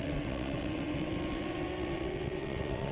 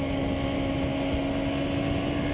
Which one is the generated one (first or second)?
first